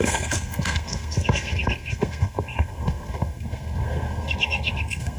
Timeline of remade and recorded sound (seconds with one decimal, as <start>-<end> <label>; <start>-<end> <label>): 0.0-5.2 remade